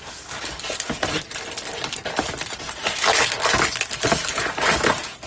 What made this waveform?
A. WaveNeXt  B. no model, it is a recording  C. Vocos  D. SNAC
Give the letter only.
B